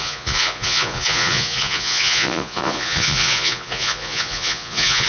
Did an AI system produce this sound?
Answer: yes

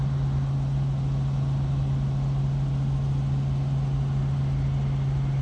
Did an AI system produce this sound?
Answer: no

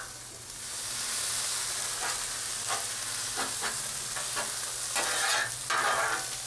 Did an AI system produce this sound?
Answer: no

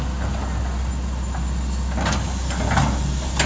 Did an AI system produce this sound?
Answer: no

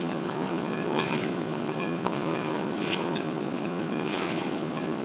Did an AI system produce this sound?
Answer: yes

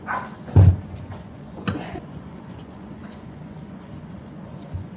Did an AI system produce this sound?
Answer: yes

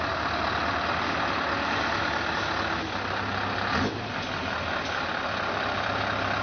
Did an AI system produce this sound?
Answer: no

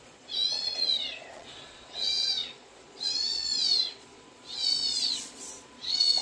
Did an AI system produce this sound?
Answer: yes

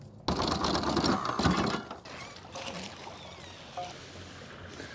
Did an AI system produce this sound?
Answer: no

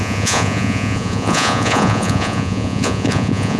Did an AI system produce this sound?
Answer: yes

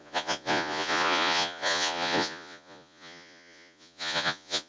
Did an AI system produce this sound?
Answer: yes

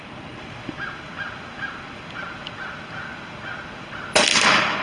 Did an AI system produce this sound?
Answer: no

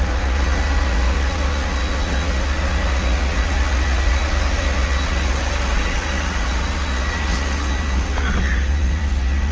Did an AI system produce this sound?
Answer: yes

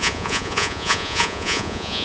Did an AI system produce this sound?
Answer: yes